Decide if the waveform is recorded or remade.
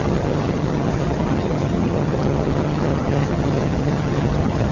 remade